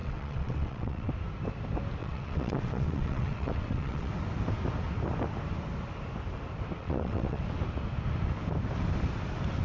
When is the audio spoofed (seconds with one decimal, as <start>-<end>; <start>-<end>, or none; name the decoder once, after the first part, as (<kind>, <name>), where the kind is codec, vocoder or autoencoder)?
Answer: 0.0-1.1 (vocoder, WaveNeXt); 2.0-4.1; 6.8-7.4